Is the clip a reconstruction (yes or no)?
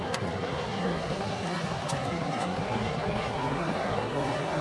yes